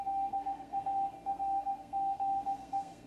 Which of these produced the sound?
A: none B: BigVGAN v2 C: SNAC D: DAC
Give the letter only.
C